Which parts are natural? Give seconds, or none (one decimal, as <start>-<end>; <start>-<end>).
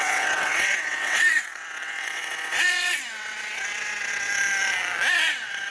4.3-5.1